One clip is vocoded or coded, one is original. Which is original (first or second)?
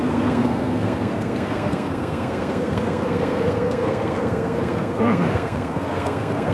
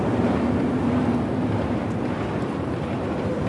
second